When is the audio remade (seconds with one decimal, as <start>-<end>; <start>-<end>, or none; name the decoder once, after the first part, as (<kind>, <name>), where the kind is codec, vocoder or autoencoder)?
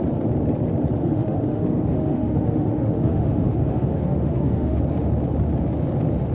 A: 1.0-4.8 (autoencoder, DAC-VAE)